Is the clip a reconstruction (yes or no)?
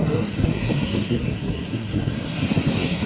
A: yes